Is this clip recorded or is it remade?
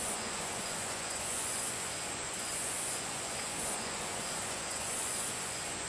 remade